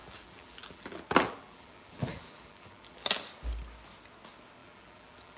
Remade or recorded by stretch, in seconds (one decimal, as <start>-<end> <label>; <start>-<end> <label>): 0.0-3.2 remade; 3.2-4.6 recorded; 4.6-5.4 remade